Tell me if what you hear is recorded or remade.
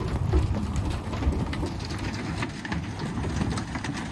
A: recorded